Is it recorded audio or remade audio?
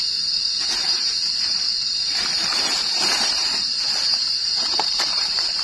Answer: remade